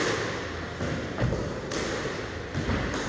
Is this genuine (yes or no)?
yes